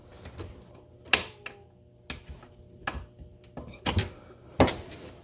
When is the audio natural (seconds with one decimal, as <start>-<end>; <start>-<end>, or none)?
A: 0.0-5.2